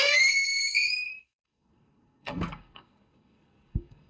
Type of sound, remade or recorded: remade